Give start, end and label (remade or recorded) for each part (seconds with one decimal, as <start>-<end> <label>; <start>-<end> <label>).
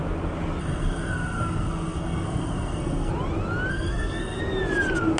0.0-0.6 recorded; 0.6-3.1 remade; 3.1-3.7 recorded; 3.7-4.4 remade; 4.4-5.2 recorded